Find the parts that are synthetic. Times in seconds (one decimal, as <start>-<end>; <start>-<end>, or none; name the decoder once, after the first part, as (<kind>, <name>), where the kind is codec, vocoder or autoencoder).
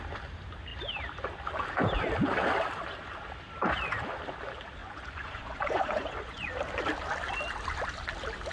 4.8-6.5 (vocoder, Vocos)